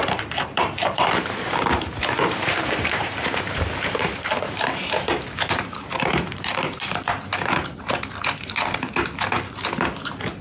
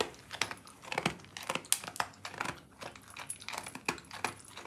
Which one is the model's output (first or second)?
first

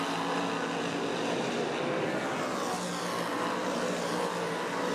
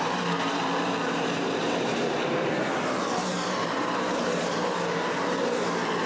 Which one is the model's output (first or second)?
second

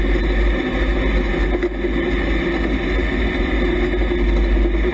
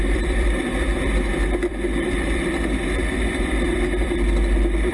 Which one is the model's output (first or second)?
second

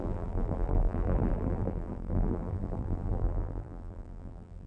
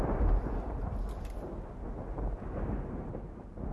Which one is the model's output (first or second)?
first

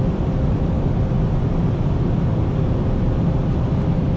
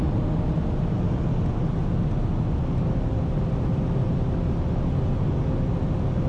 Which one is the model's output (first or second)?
first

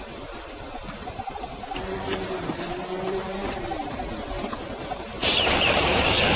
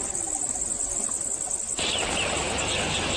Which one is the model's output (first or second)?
first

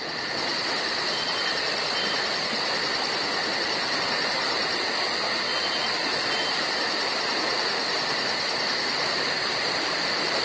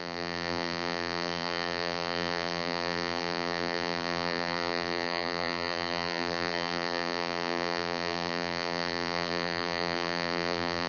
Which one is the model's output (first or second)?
second